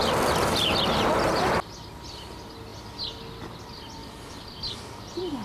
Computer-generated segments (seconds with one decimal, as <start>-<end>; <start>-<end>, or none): none